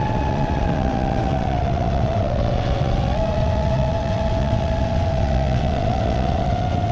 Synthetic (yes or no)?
yes